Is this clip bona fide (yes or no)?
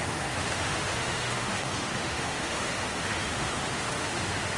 no